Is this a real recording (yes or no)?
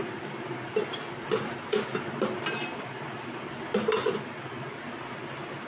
yes